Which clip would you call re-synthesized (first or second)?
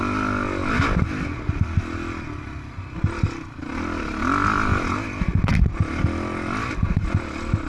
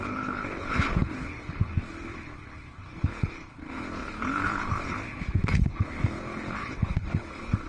second